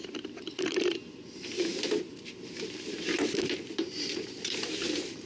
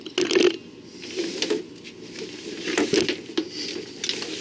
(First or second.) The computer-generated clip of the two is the first